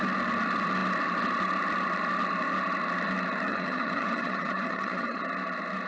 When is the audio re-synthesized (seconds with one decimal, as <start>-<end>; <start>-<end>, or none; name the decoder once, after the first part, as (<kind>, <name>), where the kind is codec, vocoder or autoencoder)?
3.5-5.2 (vocoder, HiFi-GAN)